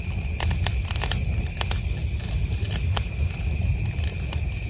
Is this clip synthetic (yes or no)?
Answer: no